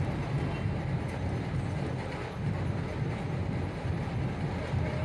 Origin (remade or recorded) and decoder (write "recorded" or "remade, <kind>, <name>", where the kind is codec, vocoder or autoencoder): recorded